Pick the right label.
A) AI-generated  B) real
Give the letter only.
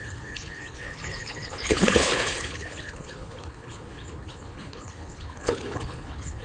A